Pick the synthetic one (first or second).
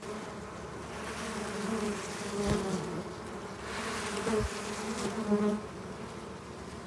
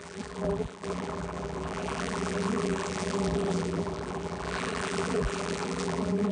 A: second